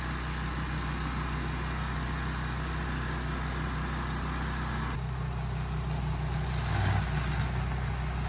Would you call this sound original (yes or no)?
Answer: yes